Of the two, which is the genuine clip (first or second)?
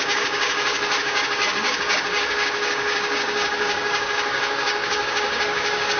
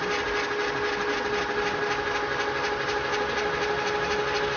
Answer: second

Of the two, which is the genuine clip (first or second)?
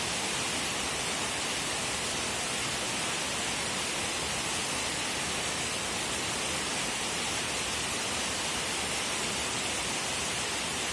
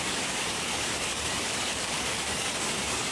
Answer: first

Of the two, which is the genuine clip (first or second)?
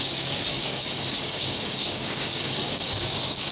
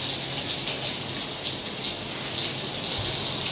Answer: second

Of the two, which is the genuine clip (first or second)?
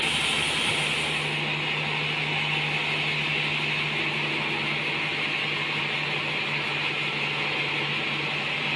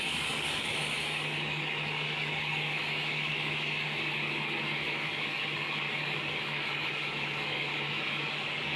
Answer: first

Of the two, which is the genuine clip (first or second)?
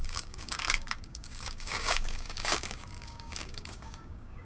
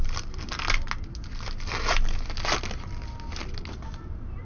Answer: second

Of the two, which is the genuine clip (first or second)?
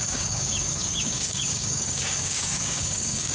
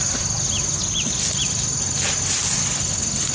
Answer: second